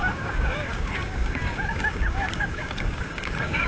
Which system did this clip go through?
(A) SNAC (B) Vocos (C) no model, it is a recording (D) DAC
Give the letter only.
D